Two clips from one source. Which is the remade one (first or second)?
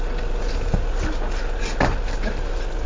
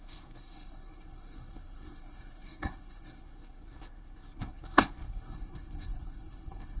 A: second